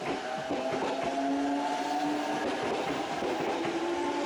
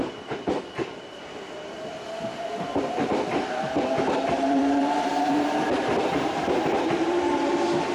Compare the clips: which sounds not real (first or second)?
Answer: second